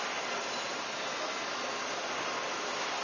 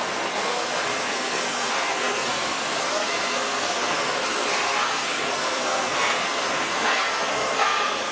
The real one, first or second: first